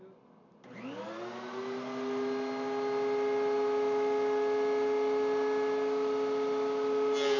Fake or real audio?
real